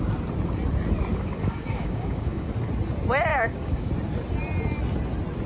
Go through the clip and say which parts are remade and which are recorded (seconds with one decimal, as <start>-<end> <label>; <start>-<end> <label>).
0.0-1.1 recorded; 1.1-2.5 remade; 2.5-3.3 recorded; 3.3-3.9 remade; 3.9-5.5 recorded